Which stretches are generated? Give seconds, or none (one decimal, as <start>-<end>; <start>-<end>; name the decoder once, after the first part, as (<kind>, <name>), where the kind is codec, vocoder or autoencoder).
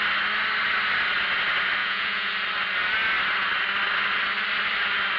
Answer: 1.8-2.3 (vocoder, Vocos)